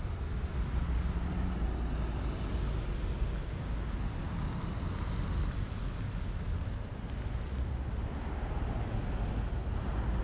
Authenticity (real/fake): real